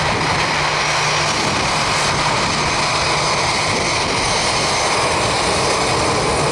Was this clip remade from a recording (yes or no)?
no